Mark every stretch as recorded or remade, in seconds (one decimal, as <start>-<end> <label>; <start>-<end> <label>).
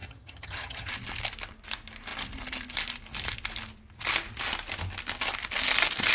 0.0-0.9 remade; 0.9-6.1 recorded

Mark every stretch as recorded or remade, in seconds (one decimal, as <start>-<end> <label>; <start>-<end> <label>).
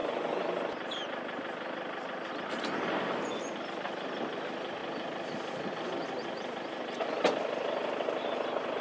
0.0-8.8 recorded